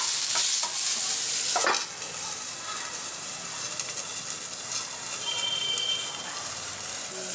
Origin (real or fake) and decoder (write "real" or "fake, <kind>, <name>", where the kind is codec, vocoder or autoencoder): real